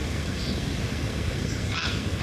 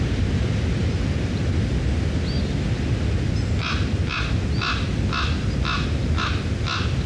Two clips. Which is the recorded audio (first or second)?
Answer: second